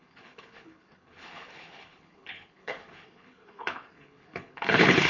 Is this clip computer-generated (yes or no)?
yes